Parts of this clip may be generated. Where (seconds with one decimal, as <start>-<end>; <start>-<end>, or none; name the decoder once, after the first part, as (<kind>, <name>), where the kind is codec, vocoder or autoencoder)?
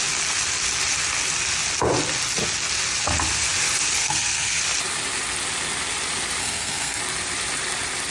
4.0-4.6 (codec, SNAC); 6.4-7.0